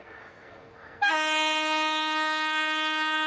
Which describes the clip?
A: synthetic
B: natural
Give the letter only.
A